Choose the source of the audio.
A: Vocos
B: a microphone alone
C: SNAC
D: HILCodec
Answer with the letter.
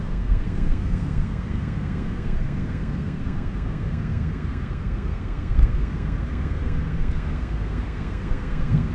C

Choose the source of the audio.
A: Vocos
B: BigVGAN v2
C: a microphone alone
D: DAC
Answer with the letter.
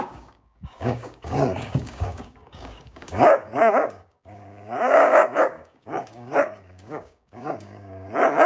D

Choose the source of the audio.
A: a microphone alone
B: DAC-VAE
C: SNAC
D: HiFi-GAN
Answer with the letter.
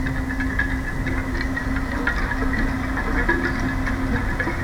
A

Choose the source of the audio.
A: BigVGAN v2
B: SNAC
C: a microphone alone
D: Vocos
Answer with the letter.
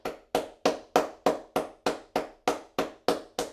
C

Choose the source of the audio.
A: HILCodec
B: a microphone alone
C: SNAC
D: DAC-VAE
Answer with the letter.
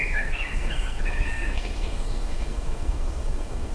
C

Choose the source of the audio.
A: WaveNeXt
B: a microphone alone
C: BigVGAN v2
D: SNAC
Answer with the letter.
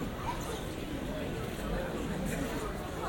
C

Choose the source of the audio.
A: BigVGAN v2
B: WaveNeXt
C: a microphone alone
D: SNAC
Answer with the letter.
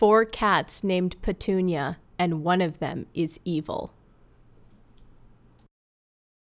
C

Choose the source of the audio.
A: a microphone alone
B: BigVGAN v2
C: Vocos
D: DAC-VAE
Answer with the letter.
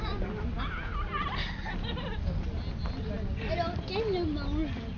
A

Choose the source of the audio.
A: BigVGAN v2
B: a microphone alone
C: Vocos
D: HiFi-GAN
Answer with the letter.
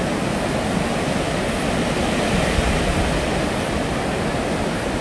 B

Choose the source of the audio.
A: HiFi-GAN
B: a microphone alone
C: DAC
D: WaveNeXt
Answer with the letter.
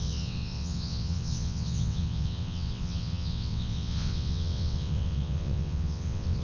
D